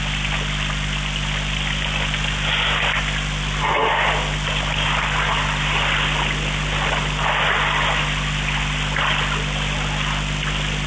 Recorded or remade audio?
recorded